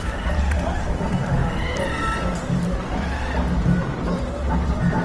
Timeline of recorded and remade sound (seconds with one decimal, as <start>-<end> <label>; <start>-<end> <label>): 0.0-1.4 remade; 1.4-4.4 recorded; 4.4-5.0 remade